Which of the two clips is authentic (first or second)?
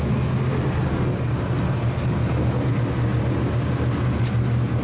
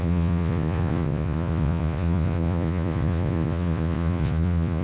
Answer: first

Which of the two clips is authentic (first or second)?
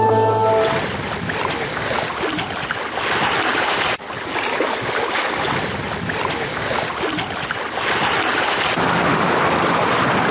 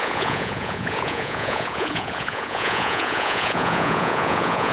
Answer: first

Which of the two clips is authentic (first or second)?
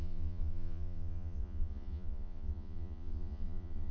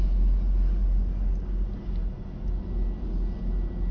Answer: second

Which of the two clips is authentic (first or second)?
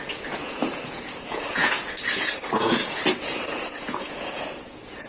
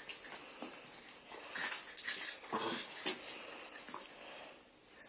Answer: second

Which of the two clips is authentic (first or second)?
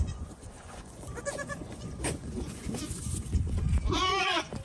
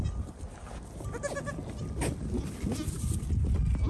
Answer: second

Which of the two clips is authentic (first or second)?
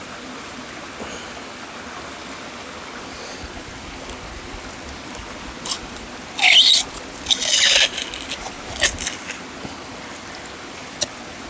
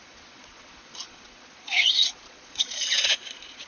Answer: first